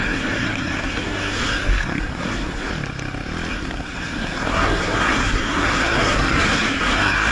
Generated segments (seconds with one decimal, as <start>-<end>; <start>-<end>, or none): 0.0-2.7; 3.5-7.3

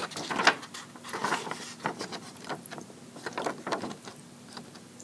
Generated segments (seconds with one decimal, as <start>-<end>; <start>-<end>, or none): none